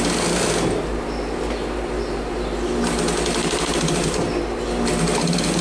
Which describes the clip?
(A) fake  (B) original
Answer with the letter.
B